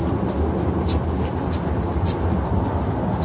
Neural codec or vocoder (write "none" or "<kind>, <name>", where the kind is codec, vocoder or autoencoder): none